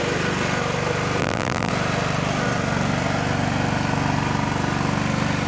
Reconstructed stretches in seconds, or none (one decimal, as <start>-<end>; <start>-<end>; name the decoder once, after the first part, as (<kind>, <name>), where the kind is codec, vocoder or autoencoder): 1.2-1.7 (vocoder, BigVGAN v2)